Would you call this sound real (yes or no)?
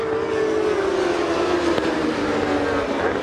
yes